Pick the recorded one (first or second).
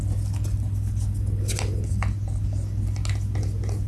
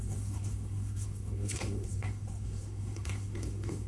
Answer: first